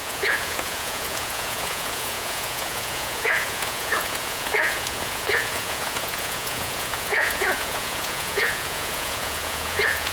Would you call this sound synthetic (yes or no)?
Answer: yes